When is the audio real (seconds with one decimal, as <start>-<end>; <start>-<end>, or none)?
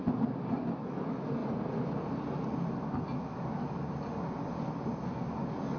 0.0-5.8